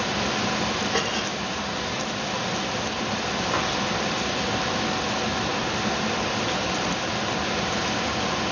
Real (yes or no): yes